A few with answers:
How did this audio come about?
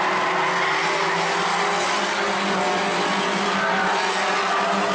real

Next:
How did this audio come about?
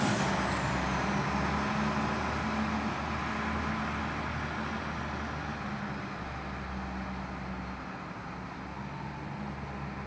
real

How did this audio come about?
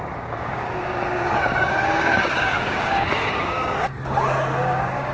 fake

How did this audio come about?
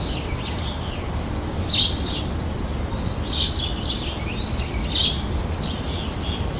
real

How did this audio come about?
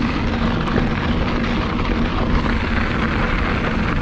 real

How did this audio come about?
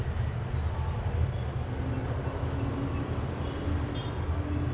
real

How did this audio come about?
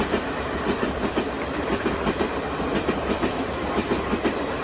real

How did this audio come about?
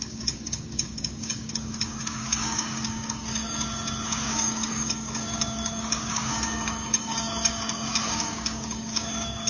fake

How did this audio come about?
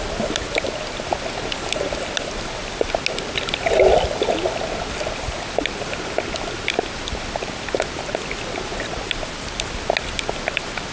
real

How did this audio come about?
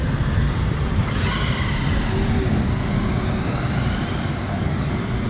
real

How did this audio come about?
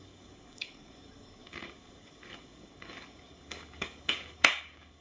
fake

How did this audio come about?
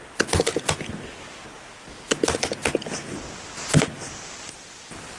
real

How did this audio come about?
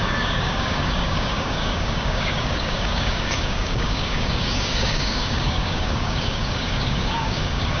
fake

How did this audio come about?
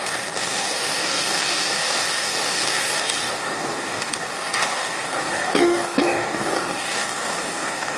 fake